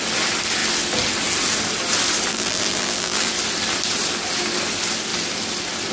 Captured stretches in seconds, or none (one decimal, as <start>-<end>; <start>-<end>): 0.0-2.3; 3.3-5.9

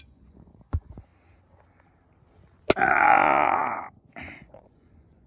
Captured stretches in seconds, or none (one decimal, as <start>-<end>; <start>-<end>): 1.1-2.9

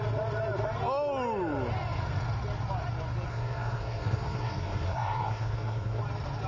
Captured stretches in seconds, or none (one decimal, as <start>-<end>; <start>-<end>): 0.0-3.3; 6.0-6.5

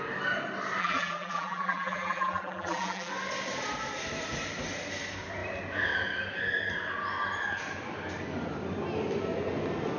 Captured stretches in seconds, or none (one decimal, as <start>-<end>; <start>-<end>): 0.0-0.8; 3.1-10.0

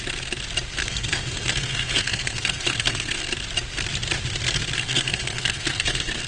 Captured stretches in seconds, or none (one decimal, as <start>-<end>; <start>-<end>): 0.0-0.8; 3.3-4.8

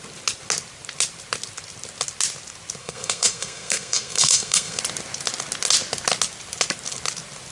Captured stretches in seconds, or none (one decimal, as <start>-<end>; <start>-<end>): 0.0-2.8; 4.8-7.5

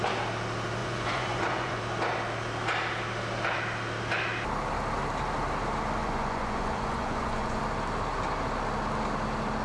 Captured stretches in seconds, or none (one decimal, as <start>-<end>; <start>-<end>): 0.0-0.8; 1.8-6.0; 7.6-9.6

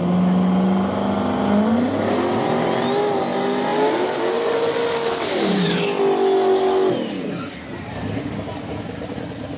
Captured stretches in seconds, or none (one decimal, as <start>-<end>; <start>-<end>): 0.0-9.6